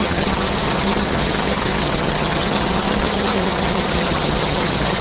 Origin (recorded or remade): remade